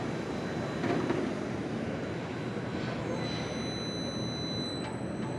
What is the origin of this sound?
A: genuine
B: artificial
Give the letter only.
A